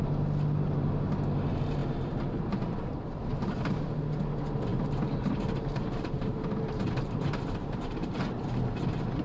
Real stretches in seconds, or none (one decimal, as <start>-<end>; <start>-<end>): 0.0-1.8; 3.6-4.7; 8.5-9.2